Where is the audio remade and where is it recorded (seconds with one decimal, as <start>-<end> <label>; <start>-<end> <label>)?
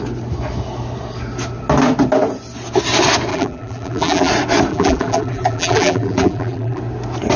0.0-3.3 recorded; 3.3-4.3 remade; 4.3-4.7 recorded; 4.7-6.8 remade; 6.8-7.4 recorded